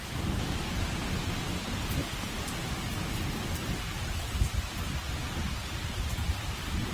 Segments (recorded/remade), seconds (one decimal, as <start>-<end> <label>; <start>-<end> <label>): 0.0-2.0 recorded; 2.0-4.6 remade; 4.6-6.9 recorded